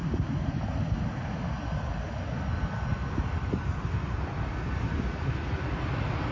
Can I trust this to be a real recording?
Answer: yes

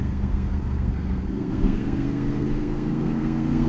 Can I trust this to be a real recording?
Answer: no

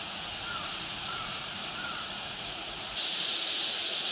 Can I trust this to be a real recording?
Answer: no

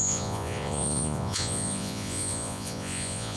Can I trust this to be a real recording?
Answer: no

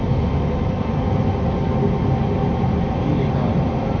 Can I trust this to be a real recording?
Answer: yes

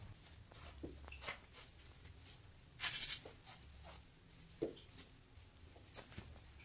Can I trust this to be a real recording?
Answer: yes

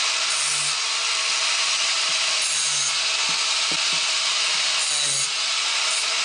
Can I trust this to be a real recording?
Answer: yes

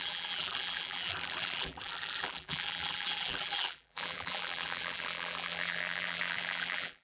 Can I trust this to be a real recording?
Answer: no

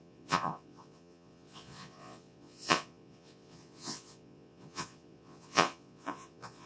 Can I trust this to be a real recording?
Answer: no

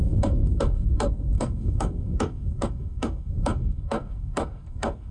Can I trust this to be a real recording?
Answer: no